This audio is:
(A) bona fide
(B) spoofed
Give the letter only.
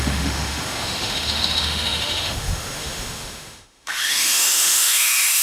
B